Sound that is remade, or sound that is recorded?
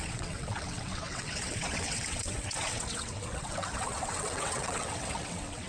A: remade